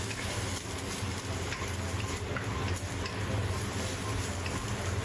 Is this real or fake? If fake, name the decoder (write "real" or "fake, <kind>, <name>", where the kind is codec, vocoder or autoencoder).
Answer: real